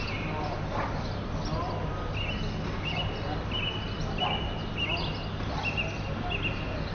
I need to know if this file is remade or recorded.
recorded